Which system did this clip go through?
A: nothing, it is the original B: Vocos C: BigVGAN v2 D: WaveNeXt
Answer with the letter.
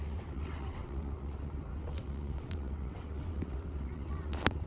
D